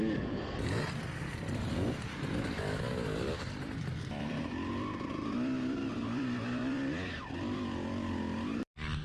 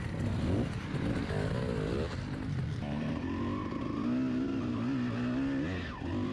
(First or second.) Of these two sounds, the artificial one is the first